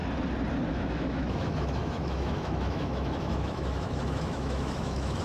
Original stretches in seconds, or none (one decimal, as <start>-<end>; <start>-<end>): 0.0-0.7